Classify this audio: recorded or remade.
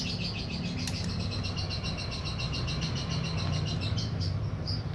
recorded